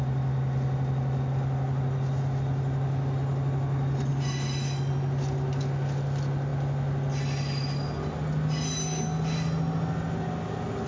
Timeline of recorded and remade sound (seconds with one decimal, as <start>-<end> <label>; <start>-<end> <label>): 0.0-10.9 recorded